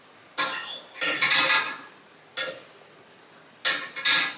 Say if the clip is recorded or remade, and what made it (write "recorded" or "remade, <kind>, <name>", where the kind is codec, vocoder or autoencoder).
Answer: recorded